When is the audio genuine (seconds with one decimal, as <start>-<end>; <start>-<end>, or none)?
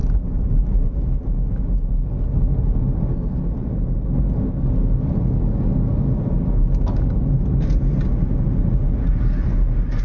0.0-10.0